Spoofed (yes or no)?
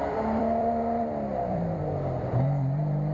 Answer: yes